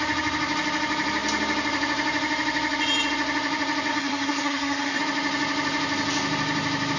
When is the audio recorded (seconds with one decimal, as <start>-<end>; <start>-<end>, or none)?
0.0-3.9; 5.0-7.0